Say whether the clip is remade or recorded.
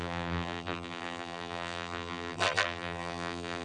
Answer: remade